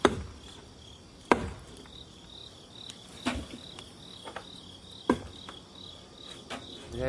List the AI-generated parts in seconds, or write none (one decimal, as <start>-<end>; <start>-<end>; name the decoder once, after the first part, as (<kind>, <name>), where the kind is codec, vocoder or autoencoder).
none